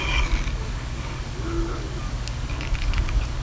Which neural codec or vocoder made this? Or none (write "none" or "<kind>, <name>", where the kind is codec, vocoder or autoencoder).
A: codec, DAC